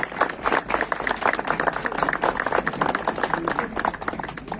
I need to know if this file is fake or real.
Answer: real